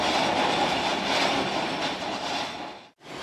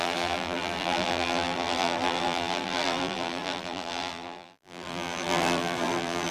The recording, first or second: first